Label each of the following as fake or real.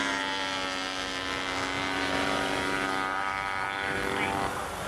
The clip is real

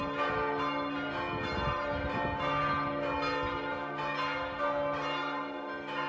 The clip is real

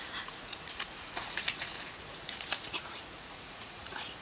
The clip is fake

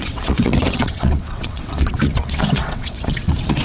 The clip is fake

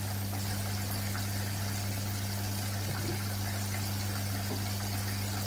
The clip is real